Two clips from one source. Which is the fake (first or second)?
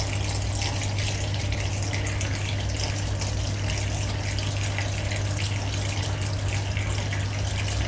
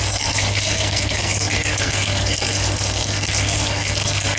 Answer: second